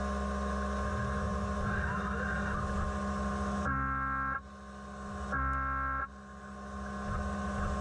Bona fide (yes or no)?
yes